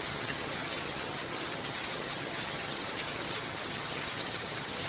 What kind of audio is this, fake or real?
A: fake